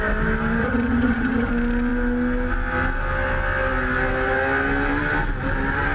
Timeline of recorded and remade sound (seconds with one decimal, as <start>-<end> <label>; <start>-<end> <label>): 0.0-0.6 recorded; 0.6-1.5 remade; 1.5-5.9 recorded